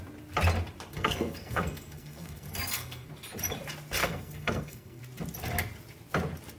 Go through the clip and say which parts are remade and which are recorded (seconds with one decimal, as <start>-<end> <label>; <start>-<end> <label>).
0.0-0.9 recorded; 0.9-3.1 remade; 3.1-4.0 recorded; 4.0-5.0 remade; 5.0-6.6 recorded